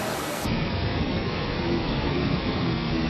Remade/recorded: remade